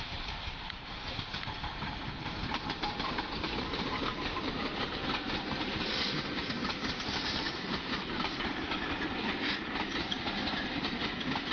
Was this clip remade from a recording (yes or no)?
yes